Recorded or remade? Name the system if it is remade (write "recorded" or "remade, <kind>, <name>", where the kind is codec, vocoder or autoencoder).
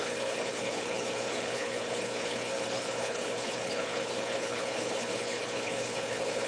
remade, codec, HILCodec